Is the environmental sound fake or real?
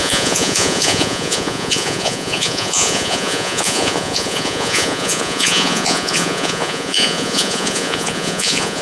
fake